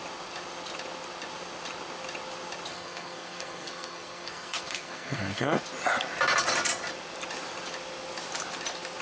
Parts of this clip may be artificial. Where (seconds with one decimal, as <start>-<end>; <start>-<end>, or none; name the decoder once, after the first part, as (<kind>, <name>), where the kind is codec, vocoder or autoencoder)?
2.7-5.6 (codec, SNAC)